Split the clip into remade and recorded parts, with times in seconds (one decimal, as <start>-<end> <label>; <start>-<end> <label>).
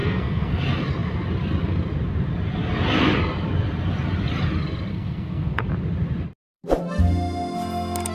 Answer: 0.0-0.6 remade; 0.6-4.9 recorded; 4.9-5.7 remade; 5.7-8.1 recorded